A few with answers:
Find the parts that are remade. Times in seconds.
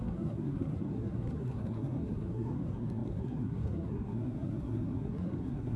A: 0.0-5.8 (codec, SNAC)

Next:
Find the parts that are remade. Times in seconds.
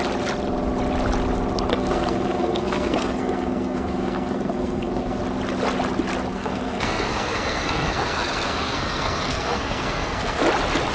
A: 1.7-5.2 (codec, SNAC); 6.3-10.4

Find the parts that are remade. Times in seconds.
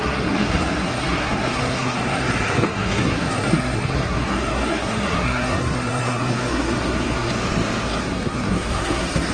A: 0.0-7.3 (codec, SNAC); 8.0-9.3